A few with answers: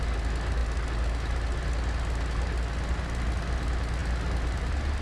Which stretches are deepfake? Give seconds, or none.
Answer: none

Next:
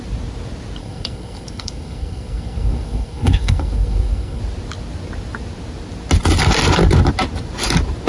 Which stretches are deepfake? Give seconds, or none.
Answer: 0.8-4.4 (codec, SNAC)

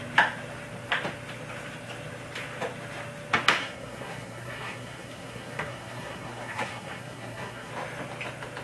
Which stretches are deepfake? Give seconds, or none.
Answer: 3.6-7.7 (codec, SNAC)

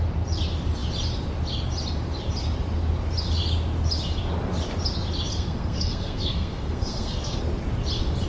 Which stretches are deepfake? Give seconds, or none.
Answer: 5.3-7.4 (codec, SNAC)

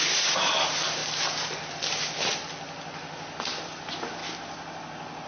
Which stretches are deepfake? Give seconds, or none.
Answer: none

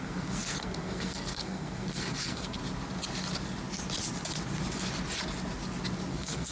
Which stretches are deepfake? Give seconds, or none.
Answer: 0.0-2.6 (codec, SNAC); 6.1-6.5